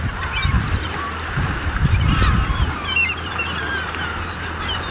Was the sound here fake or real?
fake